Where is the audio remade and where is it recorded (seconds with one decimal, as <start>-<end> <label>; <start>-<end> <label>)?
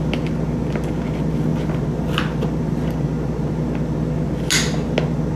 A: 0.0-5.4 recorded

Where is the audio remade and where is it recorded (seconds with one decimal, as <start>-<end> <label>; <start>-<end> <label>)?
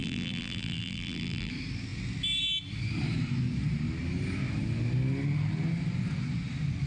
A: 0.0-1.5 remade; 1.5-6.9 recorded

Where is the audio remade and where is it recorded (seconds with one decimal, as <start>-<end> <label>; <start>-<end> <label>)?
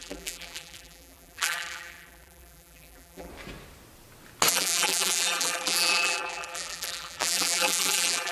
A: 0.0-3.3 remade; 3.3-4.5 recorded; 4.5-8.3 remade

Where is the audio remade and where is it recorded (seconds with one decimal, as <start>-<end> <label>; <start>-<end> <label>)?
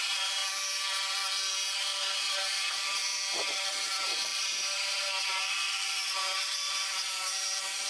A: 0.0-0.4 remade; 0.4-1.8 recorded; 1.8-7.9 remade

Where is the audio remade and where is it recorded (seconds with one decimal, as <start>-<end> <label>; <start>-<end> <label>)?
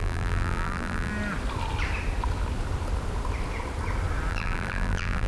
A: 0.0-1.1 remade; 1.1-4.3 recorded; 4.3-5.3 remade